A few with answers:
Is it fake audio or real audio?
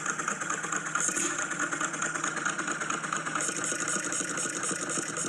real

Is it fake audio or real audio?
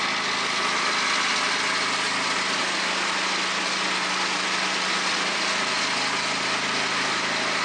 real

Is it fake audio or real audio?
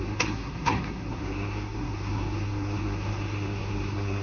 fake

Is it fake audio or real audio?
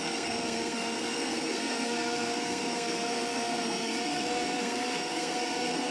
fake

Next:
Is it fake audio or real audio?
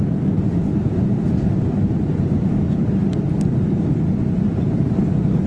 real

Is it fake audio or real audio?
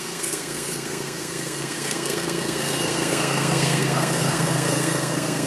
fake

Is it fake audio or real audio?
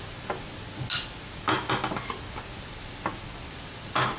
real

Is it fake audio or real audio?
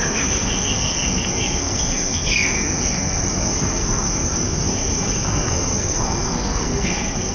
fake